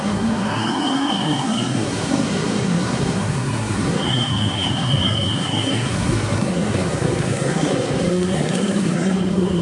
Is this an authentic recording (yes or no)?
no